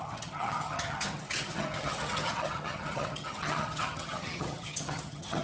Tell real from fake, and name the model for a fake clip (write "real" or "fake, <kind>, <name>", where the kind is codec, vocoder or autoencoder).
fake, vocoder, HiFi-GAN